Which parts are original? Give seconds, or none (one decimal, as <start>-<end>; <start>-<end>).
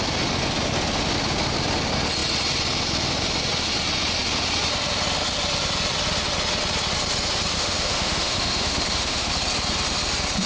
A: 0.0-7.5; 9.3-10.5